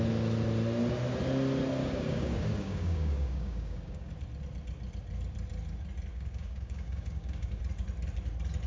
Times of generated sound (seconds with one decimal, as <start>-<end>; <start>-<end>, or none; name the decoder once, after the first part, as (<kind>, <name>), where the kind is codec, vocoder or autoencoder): 1.8-4.1 (codec, DAC); 6.1-7.6